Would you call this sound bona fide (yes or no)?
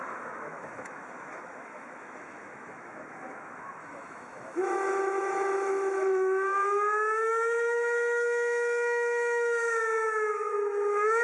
no